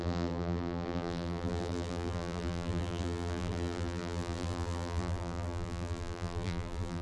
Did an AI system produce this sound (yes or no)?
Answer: yes